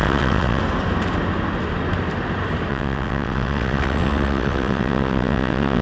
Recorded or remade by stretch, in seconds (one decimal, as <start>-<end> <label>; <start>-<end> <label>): 0.0-0.6 remade; 0.6-2.7 recorded; 2.7-5.8 remade